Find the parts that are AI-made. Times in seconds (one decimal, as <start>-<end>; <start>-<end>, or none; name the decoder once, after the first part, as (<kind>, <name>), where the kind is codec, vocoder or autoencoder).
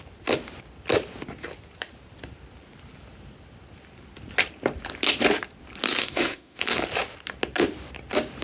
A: 6.0-6.6 (autoencoder, DAC-VAE)